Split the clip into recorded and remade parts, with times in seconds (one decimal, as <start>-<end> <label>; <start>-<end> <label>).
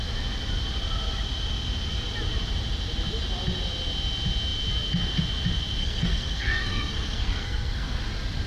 0.0-5.8 recorded; 5.8-8.0 remade; 8.0-8.5 recorded